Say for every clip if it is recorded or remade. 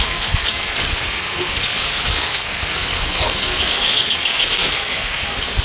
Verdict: remade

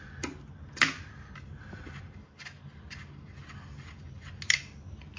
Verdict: recorded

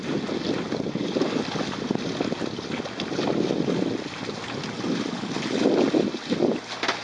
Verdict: recorded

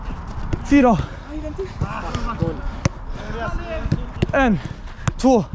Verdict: recorded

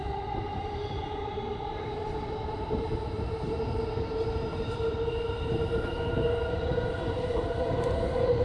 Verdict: remade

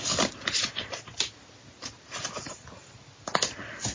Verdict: recorded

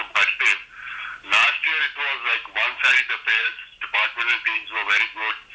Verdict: recorded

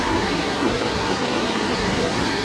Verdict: remade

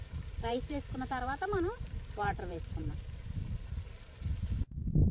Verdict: remade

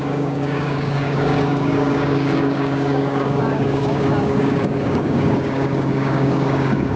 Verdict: remade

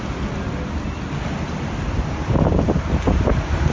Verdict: recorded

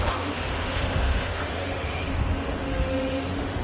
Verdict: remade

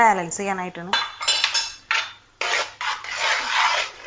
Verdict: recorded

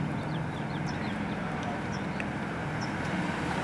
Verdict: remade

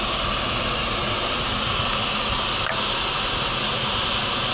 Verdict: recorded